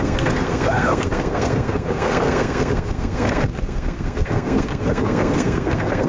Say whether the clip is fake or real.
fake